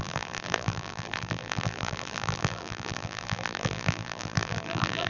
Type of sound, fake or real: fake